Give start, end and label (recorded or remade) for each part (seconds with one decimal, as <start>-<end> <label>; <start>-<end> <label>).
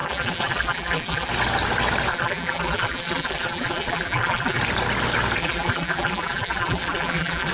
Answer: 0.0-1.3 remade; 1.3-2.1 recorded; 2.1-4.6 remade; 4.6-5.4 recorded; 5.4-7.5 remade